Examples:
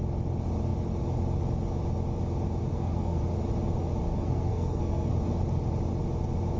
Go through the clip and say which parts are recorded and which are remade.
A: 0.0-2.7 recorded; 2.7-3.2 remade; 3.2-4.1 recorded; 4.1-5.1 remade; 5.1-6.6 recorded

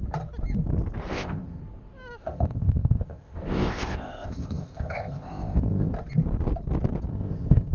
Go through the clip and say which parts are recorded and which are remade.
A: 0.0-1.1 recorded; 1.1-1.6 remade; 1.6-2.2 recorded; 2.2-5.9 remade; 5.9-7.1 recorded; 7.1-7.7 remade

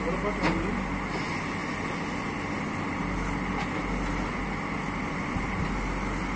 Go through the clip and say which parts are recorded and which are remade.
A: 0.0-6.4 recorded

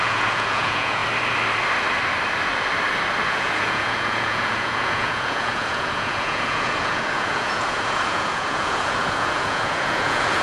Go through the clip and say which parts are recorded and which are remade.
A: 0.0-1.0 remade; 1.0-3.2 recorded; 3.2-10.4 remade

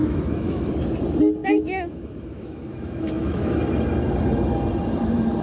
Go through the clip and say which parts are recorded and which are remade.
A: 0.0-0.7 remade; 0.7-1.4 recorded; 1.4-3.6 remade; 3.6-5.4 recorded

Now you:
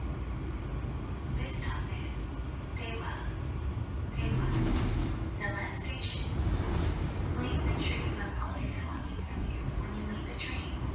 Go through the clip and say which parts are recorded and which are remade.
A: 0.0-8.3 recorded; 8.3-9.5 remade; 9.5-10.9 recorded